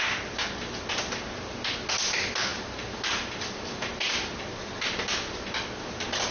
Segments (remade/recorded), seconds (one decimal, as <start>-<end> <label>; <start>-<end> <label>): 0.0-6.3 recorded